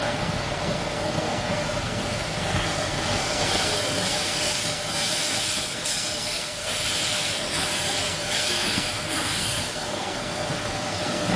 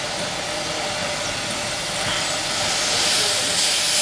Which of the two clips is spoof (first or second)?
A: first